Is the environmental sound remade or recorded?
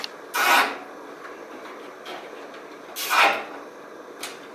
recorded